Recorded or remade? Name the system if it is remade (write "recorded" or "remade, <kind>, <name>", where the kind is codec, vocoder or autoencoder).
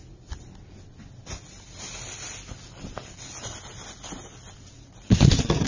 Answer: recorded